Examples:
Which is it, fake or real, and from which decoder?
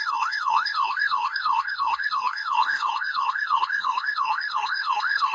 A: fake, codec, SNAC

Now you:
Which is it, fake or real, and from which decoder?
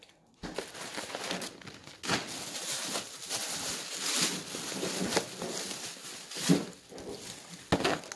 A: real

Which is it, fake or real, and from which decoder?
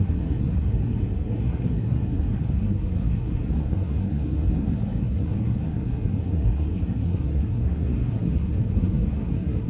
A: fake, codec, SNAC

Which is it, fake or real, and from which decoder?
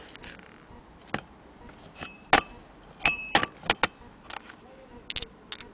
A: real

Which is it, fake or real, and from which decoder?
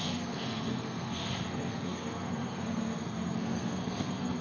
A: fake, codec, SNAC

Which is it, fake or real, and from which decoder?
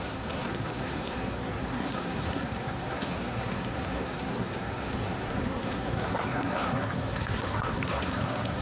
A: fake, codec, SNAC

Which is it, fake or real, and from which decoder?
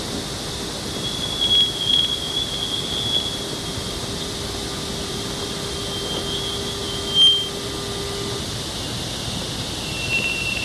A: real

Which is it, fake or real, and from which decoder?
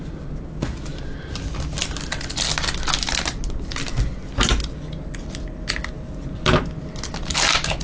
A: real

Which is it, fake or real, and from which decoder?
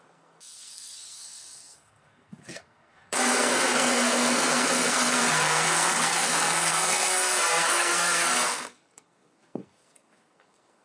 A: fake, codec, SNAC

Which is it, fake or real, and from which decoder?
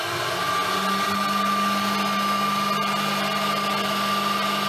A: real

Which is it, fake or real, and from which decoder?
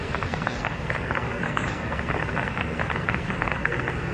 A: fake, codec, SNAC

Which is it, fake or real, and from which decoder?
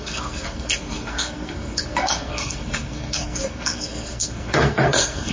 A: fake, codec, SNAC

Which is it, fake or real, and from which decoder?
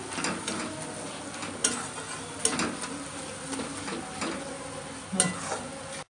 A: real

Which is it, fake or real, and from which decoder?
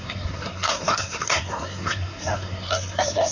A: fake, codec, SNAC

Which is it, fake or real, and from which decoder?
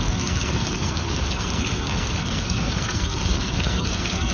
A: fake, codec, SNAC